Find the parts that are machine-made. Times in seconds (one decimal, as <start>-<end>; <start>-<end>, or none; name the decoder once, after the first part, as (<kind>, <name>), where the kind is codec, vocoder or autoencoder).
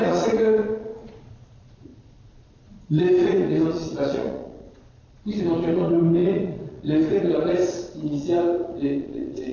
0.0-9.5 (vocoder, Vocos)